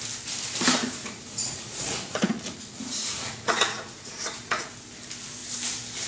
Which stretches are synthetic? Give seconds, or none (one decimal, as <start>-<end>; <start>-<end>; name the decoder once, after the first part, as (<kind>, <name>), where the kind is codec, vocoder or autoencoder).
1.0-4.7 (vocoder, Vocos)